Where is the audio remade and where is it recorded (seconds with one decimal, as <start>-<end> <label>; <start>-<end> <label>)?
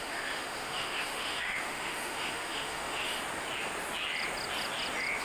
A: 0.0-3.2 remade; 3.2-5.2 recorded